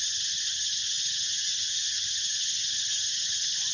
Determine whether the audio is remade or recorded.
remade